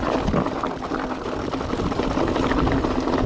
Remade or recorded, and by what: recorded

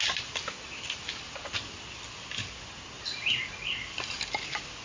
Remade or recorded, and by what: recorded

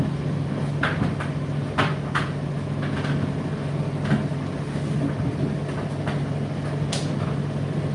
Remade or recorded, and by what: recorded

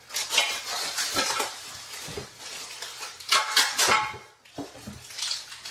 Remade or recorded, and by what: recorded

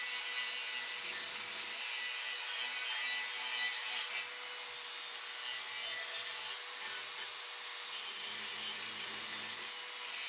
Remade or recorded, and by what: recorded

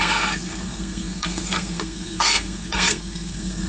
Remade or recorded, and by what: remade, codec, SNAC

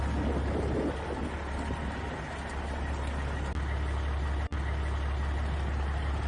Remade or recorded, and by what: recorded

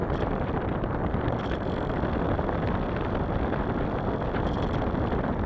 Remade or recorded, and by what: recorded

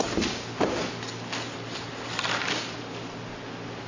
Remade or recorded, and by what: recorded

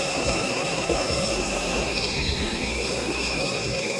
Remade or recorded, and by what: remade, codec, SNAC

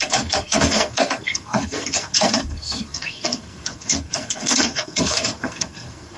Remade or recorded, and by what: remade, codec, SNAC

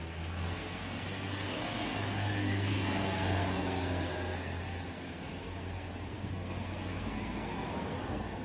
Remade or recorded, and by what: remade, codec, SNAC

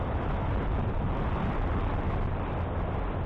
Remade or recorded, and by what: recorded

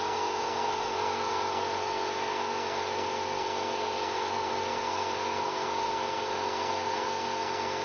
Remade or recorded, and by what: remade, codec, SNAC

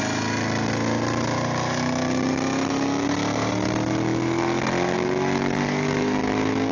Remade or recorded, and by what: recorded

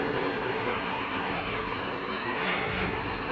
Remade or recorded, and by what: remade, codec, SNAC